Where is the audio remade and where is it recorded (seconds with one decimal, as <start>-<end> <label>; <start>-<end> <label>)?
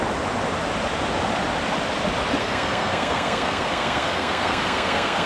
0.0-2.4 recorded; 2.4-5.3 remade